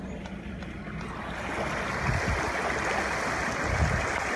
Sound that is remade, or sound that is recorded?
recorded